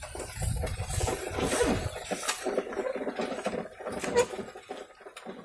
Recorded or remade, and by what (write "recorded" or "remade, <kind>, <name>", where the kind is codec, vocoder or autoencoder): recorded